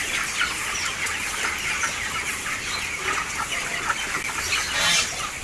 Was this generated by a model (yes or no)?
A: no